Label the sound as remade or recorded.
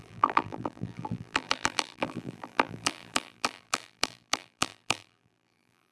remade